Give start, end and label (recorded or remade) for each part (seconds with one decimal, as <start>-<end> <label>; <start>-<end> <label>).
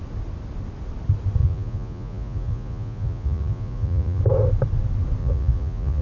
0.0-1.4 recorded; 1.4-4.2 remade; 4.2-5.2 recorded; 5.2-6.0 remade